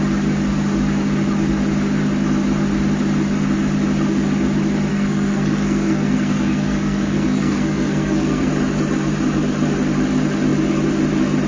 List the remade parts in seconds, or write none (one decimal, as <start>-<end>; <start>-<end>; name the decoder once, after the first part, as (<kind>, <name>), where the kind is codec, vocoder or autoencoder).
4.9-8.5 (codec, SNAC)